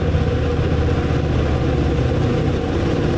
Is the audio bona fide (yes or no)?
yes